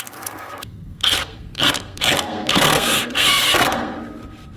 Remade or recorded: remade